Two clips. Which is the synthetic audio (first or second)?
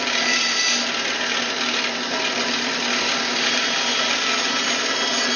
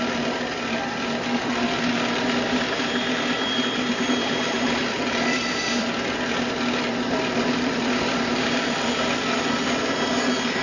second